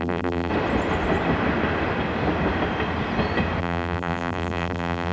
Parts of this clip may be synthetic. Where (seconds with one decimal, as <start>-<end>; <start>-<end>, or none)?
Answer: 0.0-0.5; 3.6-5.1